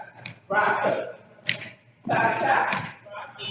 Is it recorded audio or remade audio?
remade